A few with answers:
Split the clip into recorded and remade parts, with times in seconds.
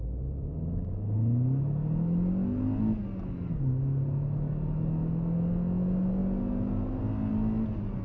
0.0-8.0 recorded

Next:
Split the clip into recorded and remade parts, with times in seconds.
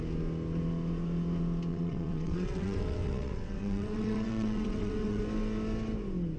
0.0-1.7 recorded; 1.7-5.2 remade; 5.2-6.4 recorded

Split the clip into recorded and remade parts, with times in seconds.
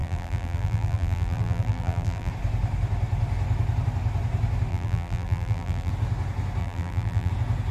0.0-2.3 remade; 2.3-4.7 recorded; 4.7-5.9 remade; 5.9-6.6 recorded; 6.6-7.3 remade; 7.3-7.7 recorded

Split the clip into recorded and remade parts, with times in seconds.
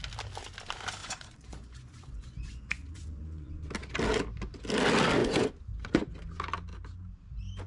0.0-1.0 recorded; 1.0-3.5 remade; 3.5-5.2 recorded; 5.2-6.1 remade; 6.1-7.7 recorded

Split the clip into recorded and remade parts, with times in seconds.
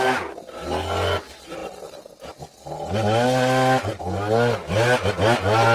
0.0-5.7 recorded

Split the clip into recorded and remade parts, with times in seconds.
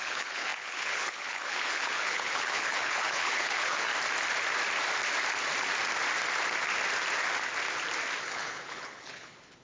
0.0-3.9 remade; 3.9-8.2 recorded; 8.2-9.6 remade